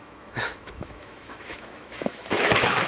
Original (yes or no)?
no